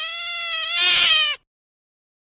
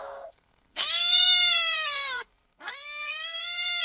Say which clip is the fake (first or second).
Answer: second